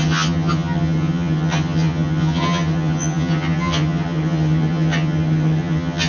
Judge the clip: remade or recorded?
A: remade